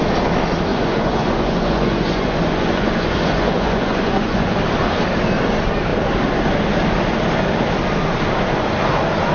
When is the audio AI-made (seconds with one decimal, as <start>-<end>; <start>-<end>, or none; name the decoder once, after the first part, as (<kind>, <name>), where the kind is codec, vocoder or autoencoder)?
0.7-4.6 (vocoder, Vocos)